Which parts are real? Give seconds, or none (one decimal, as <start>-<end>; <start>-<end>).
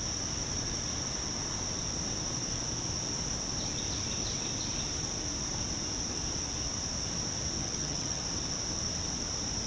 0.0-7.6; 8.2-9.7